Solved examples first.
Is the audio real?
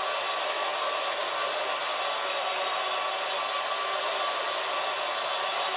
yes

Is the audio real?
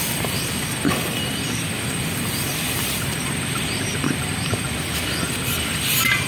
no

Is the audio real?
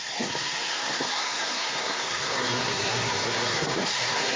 no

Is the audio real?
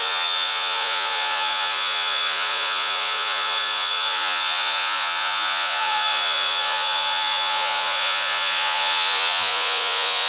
no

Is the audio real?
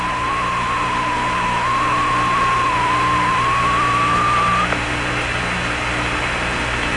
yes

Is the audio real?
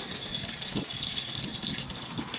yes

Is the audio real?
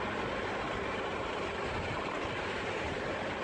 yes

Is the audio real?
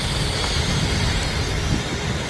yes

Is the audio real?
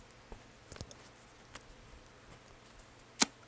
yes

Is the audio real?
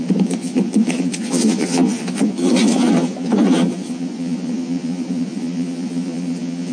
no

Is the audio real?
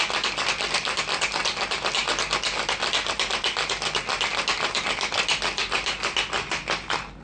yes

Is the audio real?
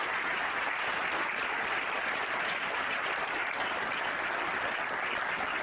no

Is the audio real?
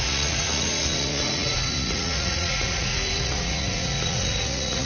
no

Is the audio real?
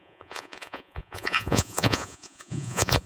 no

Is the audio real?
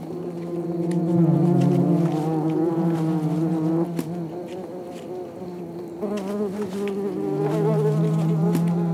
yes